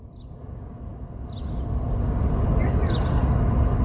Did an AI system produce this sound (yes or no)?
no